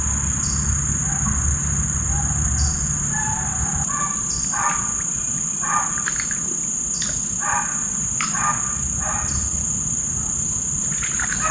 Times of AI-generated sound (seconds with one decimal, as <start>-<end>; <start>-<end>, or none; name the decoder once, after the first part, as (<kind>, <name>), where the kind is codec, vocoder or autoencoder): none